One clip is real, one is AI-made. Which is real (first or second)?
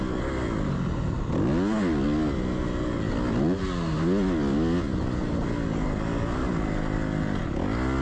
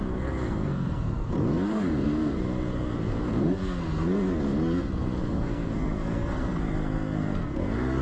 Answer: first